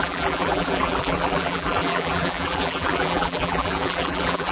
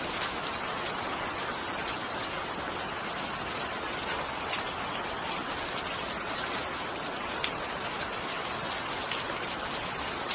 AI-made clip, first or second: first